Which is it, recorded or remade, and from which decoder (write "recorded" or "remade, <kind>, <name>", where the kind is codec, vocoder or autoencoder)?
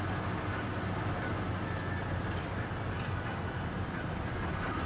recorded